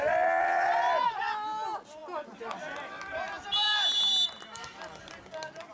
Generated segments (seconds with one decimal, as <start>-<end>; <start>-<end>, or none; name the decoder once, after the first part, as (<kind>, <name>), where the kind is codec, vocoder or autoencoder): none